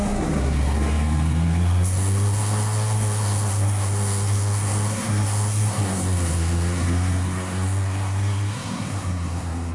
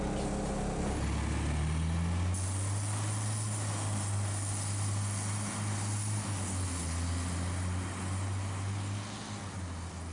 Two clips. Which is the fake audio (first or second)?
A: first